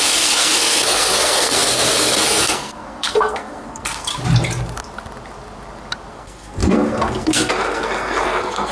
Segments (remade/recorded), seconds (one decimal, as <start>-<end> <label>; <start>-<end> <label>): 0.0-4.1 remade; 4.1-6.1 recorded; 6.1-8.7 remade